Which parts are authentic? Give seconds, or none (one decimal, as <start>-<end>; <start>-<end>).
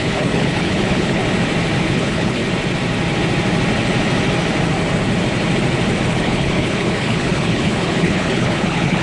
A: 1.2-1.8; 2.4-6.1